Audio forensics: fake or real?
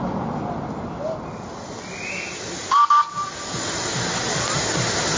real